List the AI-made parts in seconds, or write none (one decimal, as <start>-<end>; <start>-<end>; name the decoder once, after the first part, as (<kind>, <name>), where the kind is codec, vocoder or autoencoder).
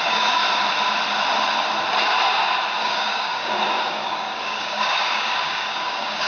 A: 0.0-0.4 (codec, DAC); 2.8-6.3